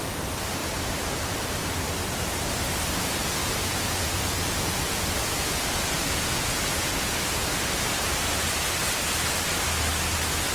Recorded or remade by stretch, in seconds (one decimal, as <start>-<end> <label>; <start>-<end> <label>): 0.0-3.4 recorded; 3.4-7.1 remade; 7.1-10.5 recorded